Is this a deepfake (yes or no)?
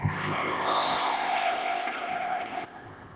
yes